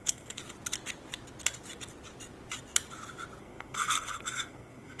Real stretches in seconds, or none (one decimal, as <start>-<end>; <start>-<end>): 0.4-3.4